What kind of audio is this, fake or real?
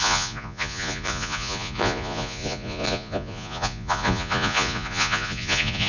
fake